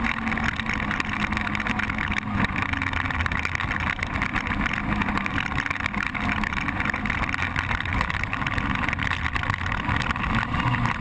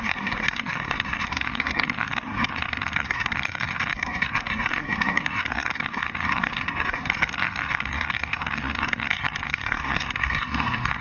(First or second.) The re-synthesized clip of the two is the second